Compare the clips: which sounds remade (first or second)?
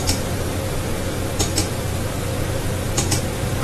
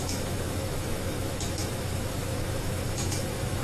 second